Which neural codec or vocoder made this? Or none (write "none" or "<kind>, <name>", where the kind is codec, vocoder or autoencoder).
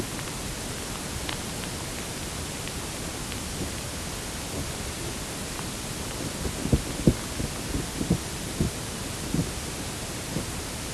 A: none